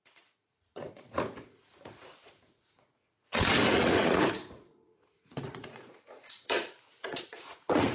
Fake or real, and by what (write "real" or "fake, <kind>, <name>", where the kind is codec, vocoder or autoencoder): fake, vocoder, Vocos